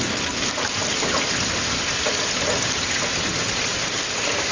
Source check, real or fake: real